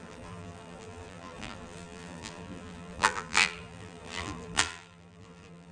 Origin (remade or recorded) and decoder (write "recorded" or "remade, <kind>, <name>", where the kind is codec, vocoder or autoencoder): remade, vocoder, BigVGAN v2